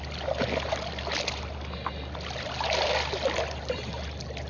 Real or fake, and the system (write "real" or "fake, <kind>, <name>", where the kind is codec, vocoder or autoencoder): real